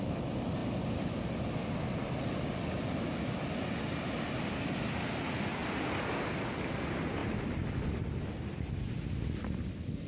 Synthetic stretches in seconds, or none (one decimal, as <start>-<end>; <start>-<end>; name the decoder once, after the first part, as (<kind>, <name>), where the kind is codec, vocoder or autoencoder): none